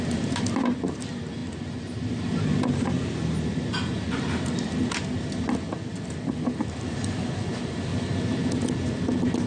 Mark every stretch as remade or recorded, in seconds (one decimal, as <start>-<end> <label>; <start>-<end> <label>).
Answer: 0.0-9.5 recorded

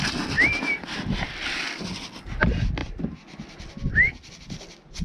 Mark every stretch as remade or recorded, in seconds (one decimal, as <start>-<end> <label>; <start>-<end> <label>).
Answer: 0.0-5.0 recorded

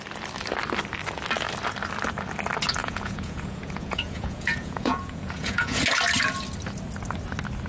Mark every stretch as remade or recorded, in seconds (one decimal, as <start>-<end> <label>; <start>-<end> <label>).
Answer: 0.0-2.8 recorded; 2.8-5.8 remade; 5.8-7.7 recorded

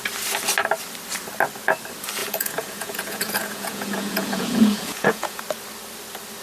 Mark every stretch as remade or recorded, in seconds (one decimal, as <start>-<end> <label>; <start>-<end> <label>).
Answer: 0.0-2.2 recorded; 2.2-5.4 remade; 5.4-6.4 recorded